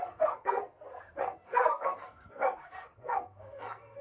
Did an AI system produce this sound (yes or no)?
yes